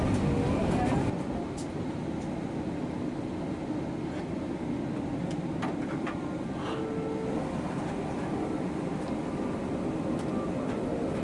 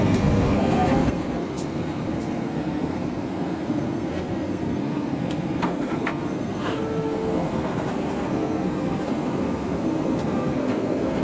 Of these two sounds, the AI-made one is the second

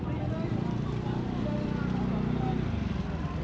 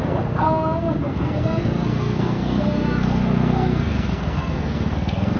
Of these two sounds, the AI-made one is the second